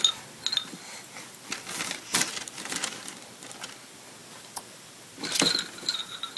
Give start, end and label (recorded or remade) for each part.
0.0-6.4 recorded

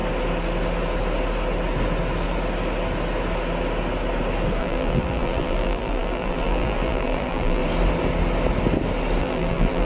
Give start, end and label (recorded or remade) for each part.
0.0-4.6 recorded; 4.6-7.6 remade; 7.6-9.2 recorded; 9.2-9.9 remade

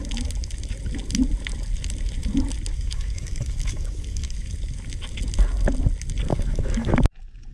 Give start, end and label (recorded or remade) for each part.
0.0-2.7 recorded; 2.7-4.5 remade; 4.5-6.3 recorded; 6.3-6.9 remade; 6.9-7.5 recorded

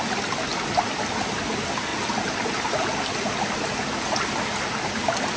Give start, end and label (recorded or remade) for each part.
0.0-5.4 recorded

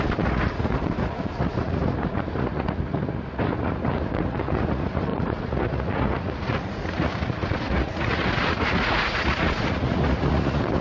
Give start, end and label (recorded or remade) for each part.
0.0-10.8 remade

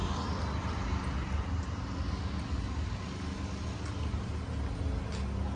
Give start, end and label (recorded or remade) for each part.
0.0-5.6 recorded

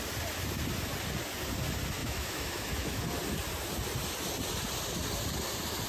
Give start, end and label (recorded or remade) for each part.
0.0-2.0 recorded; 2.0-3.0 remade; 3.0-5.9 recorded

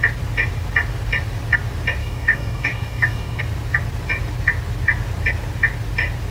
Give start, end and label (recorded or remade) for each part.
0.0-2.0 recorded; 2.0-3.4 remade; 3.4-6.3 recorded